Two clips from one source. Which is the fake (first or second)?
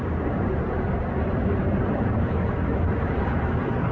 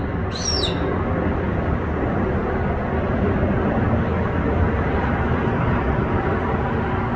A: first